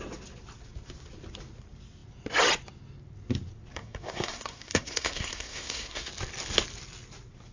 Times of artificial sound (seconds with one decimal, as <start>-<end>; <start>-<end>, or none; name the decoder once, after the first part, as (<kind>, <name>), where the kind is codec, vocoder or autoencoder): 3.7-6.1 (codec, SNAC)